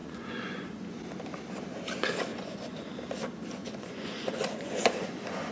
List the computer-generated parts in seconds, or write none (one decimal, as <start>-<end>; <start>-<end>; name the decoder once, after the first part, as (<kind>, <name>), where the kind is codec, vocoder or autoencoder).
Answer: 0.0-1.0 (vocoder, Vocos); 2.3-2.9; 3.6-5.5